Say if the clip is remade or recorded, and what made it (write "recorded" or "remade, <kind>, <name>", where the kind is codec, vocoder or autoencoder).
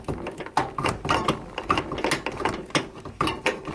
recorded